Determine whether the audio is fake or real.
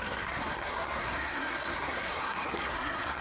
fake